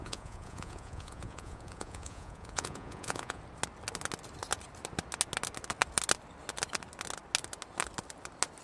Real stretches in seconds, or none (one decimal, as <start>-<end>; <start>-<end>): 3.4-8.6